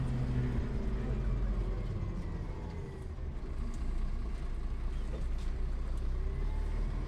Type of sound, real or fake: real